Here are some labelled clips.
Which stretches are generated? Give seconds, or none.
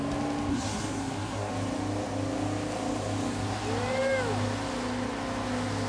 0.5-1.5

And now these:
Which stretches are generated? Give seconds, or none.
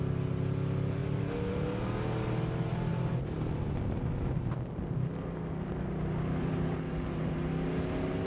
none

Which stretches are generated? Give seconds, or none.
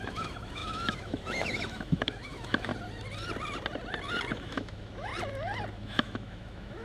0.0-2.7; 4.3-5.1; 5.7-6.8